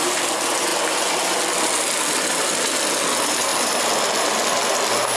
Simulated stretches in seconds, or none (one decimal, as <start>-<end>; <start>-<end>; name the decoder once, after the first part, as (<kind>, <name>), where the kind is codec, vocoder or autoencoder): none